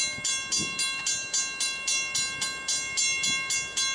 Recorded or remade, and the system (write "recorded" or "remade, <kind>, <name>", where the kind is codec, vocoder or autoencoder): recorded